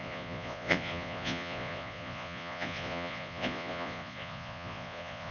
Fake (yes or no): yes